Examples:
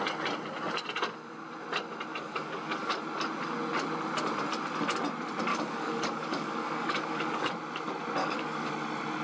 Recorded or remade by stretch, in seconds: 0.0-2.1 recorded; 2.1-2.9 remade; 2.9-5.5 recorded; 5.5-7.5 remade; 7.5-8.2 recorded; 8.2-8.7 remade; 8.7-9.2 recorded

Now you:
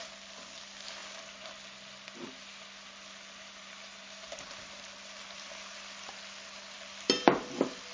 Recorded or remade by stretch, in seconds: 0.0-7.9 recorded

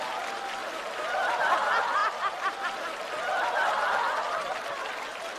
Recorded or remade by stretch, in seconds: 0.0-5.4 recorded

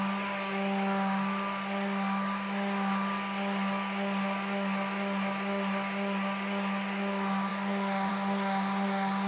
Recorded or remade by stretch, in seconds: 0.0-9.3 recorded

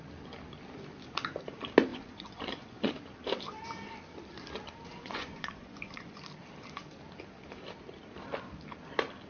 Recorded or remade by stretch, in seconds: 0.0-1.9 recorded; 1.9-2.9 remade; 2.9-4.9 recorded; 4.9-6.2 remade; 6.2-9.3 recorded